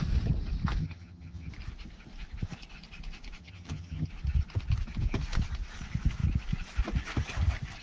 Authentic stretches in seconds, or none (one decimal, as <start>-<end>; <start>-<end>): 0.0-0.8; 1.5-3.4; 4.1-7.8